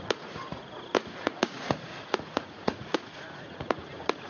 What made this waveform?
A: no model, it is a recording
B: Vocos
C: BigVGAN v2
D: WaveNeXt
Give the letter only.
B